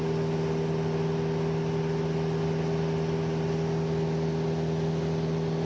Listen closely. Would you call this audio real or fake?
real